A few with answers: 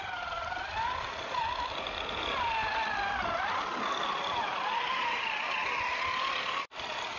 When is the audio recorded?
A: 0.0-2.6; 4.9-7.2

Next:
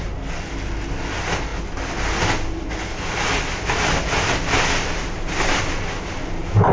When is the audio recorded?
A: 0.0-6.7

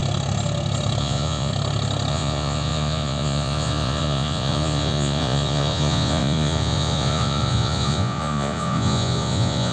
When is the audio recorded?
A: 0.0-1.0; 1.5-2.1

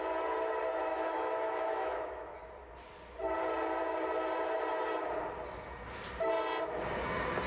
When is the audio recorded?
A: 0.0-0.9; 2.4-7.5

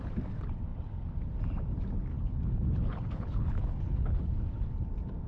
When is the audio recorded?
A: 0.0-2.1; 4.3-5.3

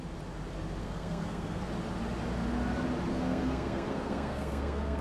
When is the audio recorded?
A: 0.0-0.8; 1.7-3.1